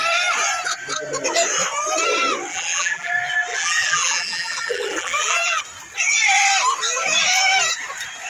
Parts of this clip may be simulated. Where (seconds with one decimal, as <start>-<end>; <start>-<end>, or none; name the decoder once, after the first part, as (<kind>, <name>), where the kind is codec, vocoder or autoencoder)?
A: 2.5-3.1 (vocoder, BigVGAN v2); 3.5-5.6